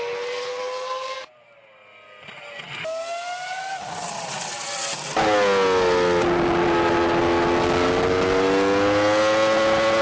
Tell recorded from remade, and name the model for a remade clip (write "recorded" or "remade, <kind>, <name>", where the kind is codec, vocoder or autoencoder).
recorded